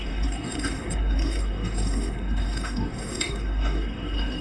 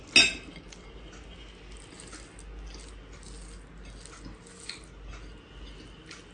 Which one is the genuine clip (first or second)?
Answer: second